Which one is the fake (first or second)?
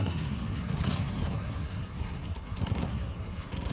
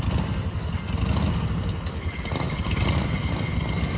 first